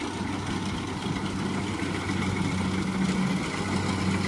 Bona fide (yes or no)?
yes